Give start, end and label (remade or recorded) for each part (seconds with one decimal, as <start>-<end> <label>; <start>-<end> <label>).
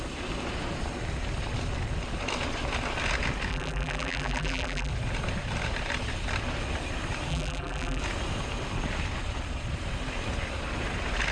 0.0-3.5 recorded; 3.5-4.9 remade; 4.9-7.3 recorded; 7.3-8.0 remade; 8.0-11.3 recorded